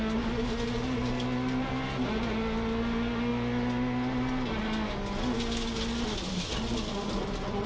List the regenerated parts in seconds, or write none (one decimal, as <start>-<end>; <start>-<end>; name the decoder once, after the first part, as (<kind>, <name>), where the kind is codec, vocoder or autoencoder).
none